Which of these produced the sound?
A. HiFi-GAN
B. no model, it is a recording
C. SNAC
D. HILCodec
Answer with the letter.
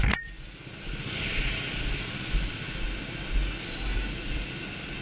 B